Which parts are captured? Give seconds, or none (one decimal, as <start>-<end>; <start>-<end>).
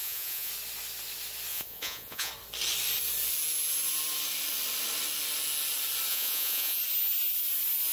0.5-1.5; 2.3-6.1; 6.8-7.9